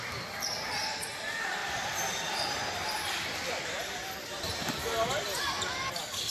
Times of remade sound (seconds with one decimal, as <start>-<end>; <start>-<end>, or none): 1.6-5.4